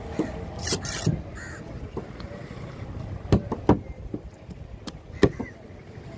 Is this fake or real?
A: real